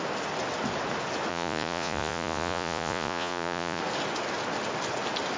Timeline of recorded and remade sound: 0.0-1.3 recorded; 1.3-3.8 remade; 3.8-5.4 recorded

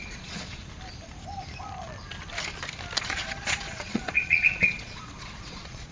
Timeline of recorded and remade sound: 0.0-0.6 remade; 0.6-3.0 recorded; 3.0-5.9 remade